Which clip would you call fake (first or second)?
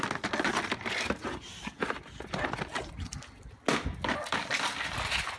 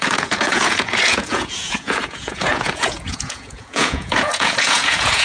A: second